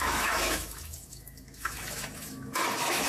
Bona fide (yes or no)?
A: no